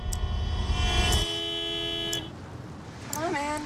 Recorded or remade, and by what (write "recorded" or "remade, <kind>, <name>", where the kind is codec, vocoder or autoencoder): recorded